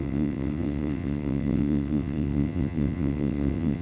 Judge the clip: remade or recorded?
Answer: remade